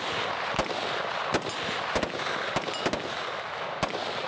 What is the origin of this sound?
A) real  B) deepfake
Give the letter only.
A